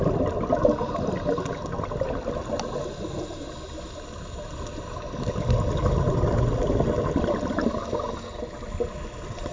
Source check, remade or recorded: recorded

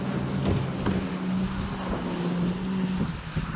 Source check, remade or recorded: recorded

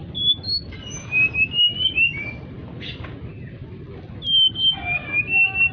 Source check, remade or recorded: recorded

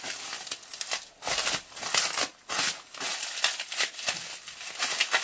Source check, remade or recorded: recorded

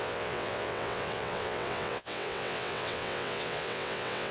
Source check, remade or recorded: remade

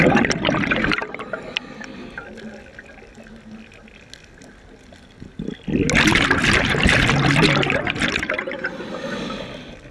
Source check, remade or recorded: recorded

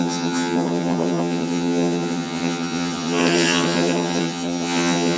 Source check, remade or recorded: remade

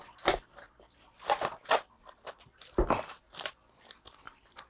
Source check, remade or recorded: recorded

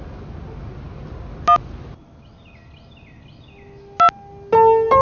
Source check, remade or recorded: recorded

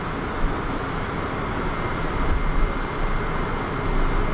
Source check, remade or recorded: recorded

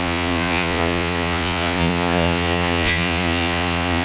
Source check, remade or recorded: remade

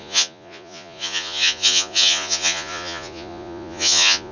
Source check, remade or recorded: remade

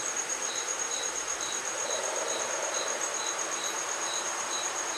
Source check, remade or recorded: remade